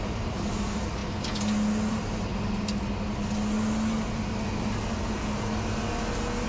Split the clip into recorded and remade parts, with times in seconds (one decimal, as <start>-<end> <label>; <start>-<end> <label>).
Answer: 0.0-1.0 remade; 1.0-1.9 recorded; 1.9-2.3 remade; 2.3-6.5 recorded